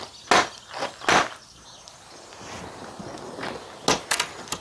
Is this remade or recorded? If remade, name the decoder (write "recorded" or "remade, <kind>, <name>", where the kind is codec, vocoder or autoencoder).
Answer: recorded